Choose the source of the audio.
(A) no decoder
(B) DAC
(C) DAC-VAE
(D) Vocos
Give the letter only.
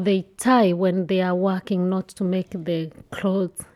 A